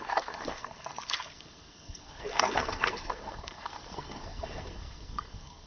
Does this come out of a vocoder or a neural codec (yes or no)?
yes